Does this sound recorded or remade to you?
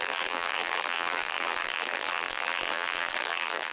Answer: remade